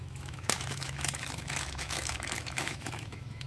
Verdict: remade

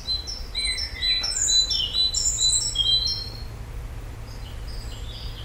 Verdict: recorded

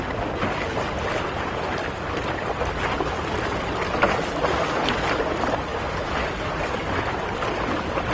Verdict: recorded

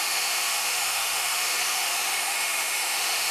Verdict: remade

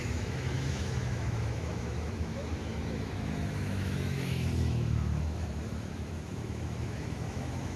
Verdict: remade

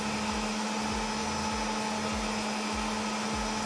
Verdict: recorded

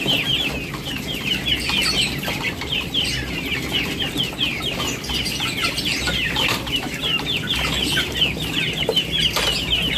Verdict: recorded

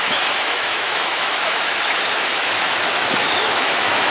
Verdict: remade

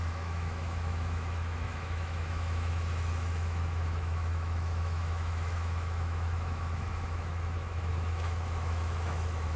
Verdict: remade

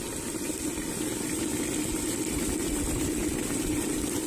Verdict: recorded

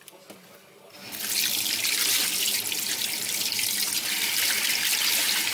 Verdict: recorded